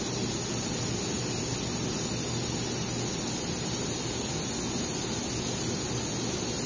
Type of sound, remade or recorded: recorded